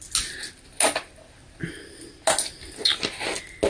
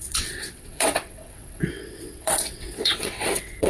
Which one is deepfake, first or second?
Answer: second